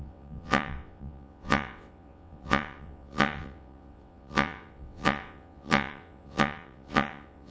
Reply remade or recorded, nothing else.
remade